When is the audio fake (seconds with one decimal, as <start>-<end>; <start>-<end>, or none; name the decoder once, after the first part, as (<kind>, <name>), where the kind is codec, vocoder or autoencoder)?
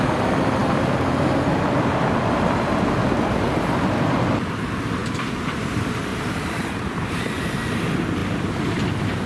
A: 6.1-7.2 (vocoder, BigVGAN v2)